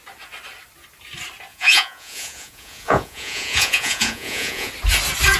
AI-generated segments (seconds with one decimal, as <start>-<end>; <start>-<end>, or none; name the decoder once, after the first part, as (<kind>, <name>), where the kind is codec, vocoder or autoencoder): 1.5-4.7 (vocoder, Vocos)